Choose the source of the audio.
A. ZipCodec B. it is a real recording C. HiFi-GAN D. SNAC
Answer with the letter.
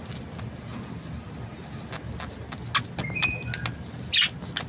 B